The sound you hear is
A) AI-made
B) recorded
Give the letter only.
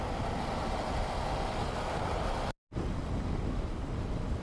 B